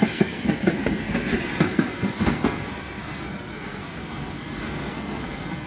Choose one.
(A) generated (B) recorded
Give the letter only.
A